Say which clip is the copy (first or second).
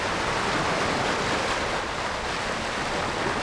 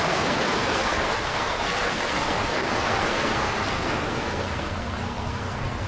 second